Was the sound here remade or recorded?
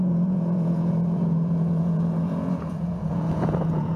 remade